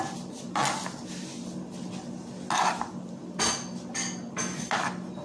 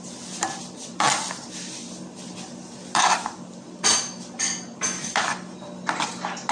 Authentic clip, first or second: first